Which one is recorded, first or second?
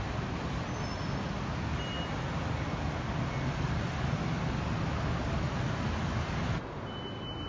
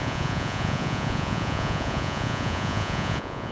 first